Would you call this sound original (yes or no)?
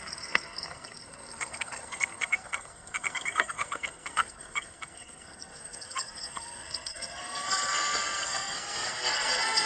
no